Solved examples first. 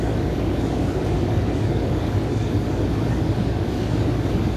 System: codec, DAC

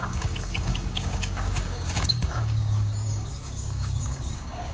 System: codec, DAC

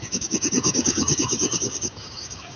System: codec, DAC